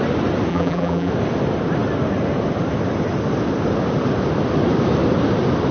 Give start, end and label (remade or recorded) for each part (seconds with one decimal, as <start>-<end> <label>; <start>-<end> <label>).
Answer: 0.0-0.5 recorded; 0.5-1.1 remade; 1.1-5.7 recorded